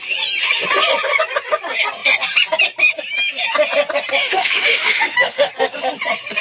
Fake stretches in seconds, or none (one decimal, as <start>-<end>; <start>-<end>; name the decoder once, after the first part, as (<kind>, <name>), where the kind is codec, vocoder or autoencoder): 4.2-5.5 (autoencoder, DAC-VAE)